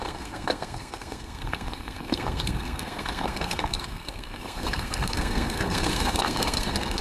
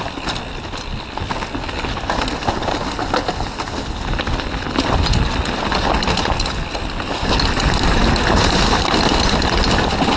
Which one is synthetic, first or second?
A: first